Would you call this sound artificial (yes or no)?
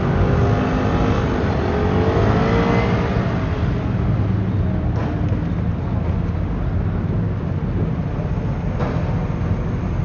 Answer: no